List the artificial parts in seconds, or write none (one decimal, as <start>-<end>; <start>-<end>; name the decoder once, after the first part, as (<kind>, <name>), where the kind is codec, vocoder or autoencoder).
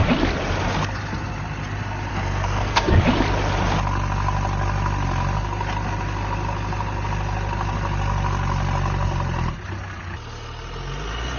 2.1-3.0 (codec, SNAC)